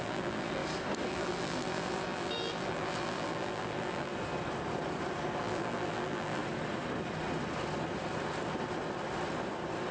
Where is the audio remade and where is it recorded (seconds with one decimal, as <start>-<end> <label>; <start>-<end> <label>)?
0.0-0.6 remade; 0.6-1.1 recorded; 1.1-4.1 remade; 4.1-5.4 recorded; 5.4-6.4 remade; 6.4-9.9 recorded

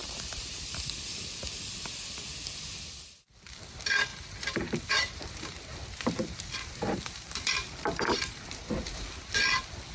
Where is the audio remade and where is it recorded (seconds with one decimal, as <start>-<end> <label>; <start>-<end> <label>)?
0.0-0.8 remade; 0.8-4.1 recorded; 4.1-9.3 remade; 9.3-9.9 recorded

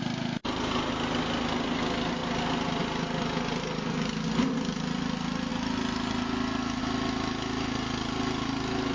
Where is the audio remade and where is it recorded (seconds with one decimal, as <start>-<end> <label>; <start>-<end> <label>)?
0.0-8.9 recorded